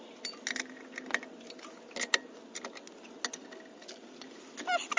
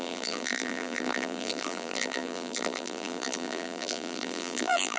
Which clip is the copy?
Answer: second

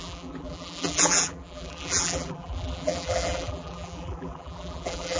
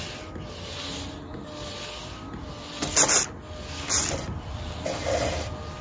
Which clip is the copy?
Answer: first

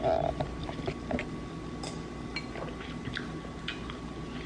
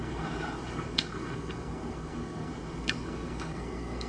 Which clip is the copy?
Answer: second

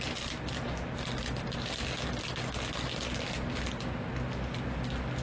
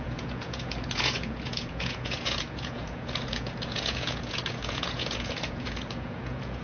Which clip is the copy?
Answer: second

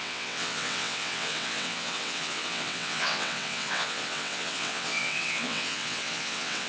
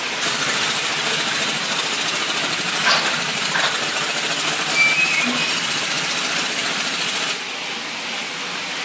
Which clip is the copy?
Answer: first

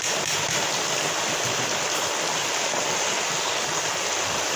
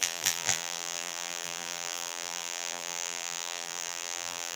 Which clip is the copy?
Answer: second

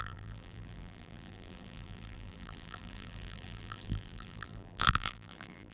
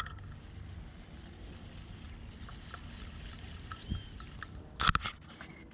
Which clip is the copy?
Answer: first